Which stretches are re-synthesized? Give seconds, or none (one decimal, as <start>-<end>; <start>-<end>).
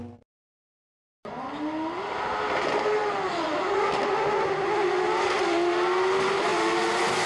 none